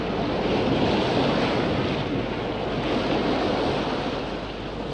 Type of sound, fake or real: real